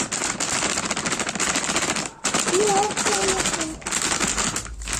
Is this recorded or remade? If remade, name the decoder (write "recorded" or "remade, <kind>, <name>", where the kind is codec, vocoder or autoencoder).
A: recorded